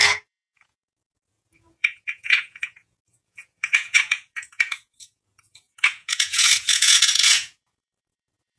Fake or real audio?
fake